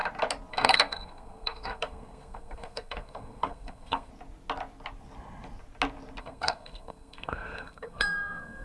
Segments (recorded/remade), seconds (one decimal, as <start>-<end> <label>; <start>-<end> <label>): 0.0-0.5 recorded; 0.5-4.1 remade; 4.1-6.2 recorded; 6.2-8.6 remade